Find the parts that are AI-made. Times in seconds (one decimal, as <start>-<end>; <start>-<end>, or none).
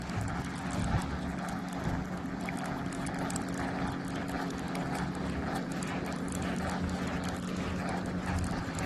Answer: none